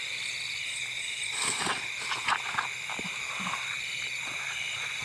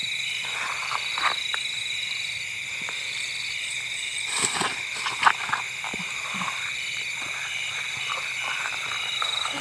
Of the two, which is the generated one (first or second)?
second